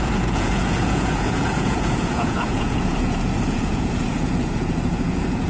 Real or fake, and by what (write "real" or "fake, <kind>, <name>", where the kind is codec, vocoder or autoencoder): fake, vocoder, Vocos